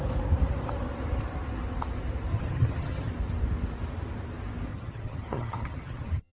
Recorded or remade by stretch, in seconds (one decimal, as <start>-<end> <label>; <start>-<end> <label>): 0.0-2.3 recorded; 2.3-3.1 remade; 3.1-4.7 recorded; 4.7-6.3 remade